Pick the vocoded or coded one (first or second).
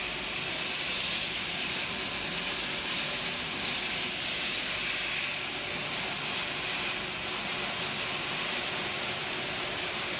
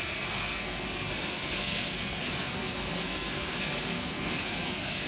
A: second